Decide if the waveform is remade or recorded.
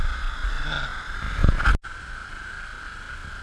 recorded